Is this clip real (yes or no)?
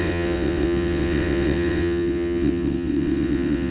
no